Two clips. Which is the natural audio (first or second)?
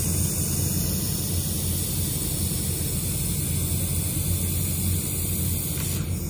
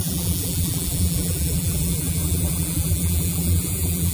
first